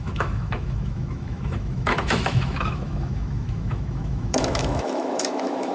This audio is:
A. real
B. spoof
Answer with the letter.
B